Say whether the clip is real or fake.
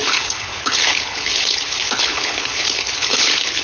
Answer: fake